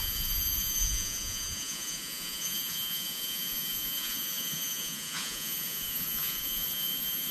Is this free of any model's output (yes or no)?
no